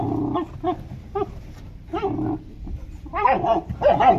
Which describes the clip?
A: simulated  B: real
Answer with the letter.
B